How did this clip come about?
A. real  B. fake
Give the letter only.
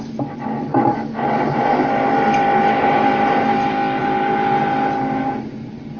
A